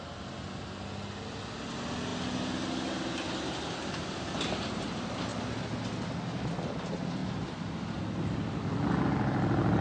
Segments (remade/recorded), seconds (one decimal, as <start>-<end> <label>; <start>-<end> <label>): 0.0-9.8 recorded